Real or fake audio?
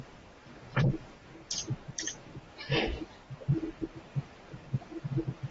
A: fake